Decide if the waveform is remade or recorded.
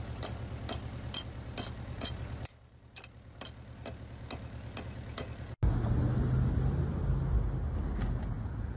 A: recorded